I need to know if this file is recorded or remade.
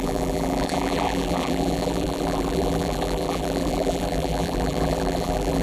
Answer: remade